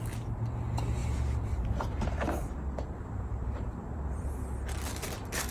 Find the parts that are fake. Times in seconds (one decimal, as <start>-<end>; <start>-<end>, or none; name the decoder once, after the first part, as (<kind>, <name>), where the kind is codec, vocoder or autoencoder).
1.0-4.3 (vocoder, BigVGAN v2)